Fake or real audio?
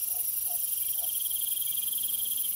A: real